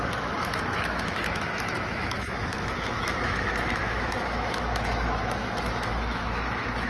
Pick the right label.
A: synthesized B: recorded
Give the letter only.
A